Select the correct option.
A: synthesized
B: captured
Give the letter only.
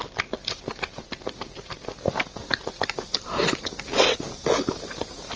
B